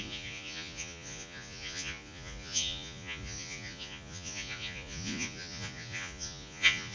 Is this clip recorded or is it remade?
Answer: remade